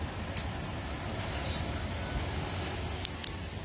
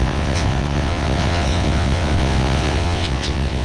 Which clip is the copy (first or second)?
second